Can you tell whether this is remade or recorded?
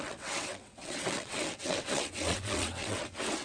remade